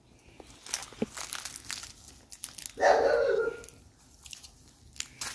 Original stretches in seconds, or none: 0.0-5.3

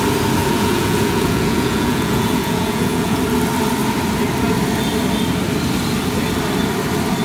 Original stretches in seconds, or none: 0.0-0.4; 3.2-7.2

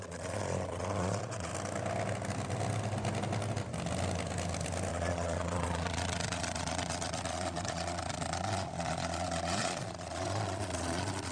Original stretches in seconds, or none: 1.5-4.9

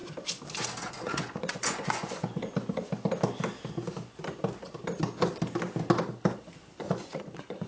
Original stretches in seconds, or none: 0.0-0.9; 2.4-6.8

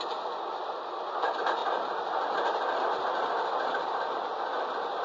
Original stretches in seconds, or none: 0.0-5.0

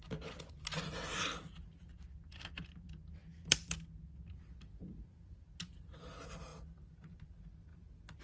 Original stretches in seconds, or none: 0.0-8.2

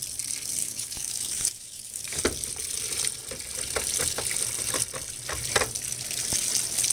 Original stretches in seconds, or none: 0.0-0.6; 2.2-6.9